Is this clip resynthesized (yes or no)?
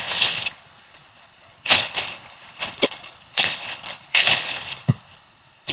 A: yes